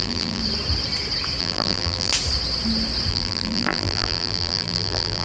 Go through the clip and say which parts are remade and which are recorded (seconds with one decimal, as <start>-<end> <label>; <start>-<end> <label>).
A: 0.0-0.4 remade; 0.4-1.4 recorded; 1.4-2.1 remade; 2.1-3.1 recorded; 3.1-5.2 remade